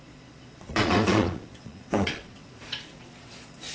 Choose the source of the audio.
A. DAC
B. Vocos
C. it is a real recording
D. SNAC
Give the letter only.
B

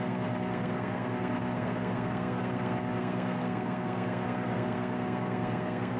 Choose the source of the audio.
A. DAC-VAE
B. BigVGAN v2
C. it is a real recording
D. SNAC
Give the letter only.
D